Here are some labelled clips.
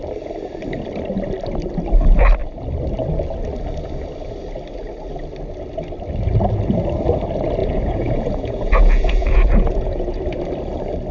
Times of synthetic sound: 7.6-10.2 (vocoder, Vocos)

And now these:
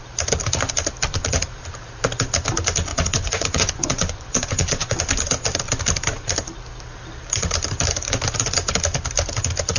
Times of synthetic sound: 2.9-5.0 (vocoder, Vocos)

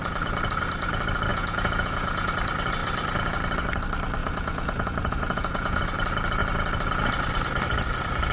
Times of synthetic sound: 1.3-2.3 (vocoder, Vocos); 4.2-5.8

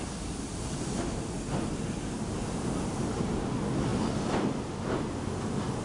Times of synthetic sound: none